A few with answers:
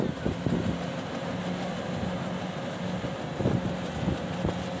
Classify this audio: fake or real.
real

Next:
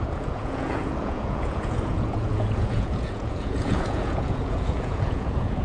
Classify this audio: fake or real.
fake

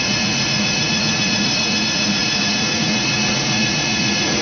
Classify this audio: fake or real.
fake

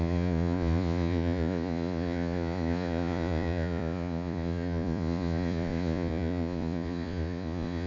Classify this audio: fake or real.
fake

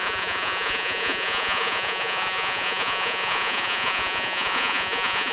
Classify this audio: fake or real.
fake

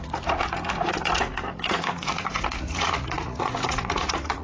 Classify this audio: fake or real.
fake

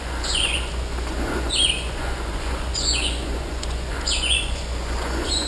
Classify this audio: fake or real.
fake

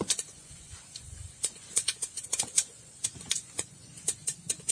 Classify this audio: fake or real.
fake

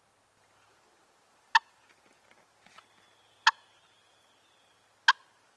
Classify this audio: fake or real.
real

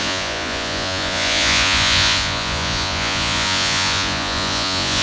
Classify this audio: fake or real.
fake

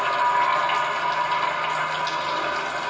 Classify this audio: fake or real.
real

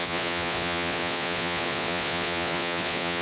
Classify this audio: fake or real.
fake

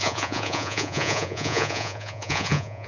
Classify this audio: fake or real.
fake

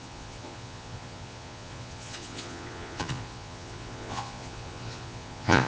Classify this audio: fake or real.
fake